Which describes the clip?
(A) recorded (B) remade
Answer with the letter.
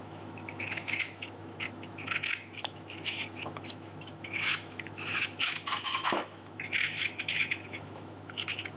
B